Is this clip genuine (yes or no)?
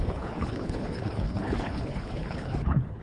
no